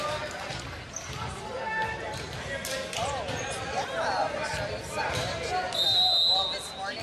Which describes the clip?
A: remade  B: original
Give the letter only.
B